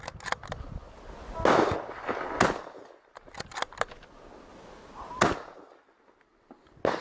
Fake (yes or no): no